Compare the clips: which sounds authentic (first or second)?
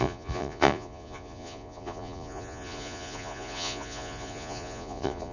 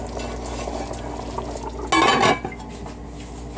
second